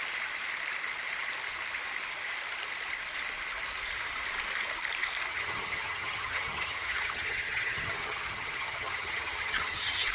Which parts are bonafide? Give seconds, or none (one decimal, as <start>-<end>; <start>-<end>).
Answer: 0.0-5.3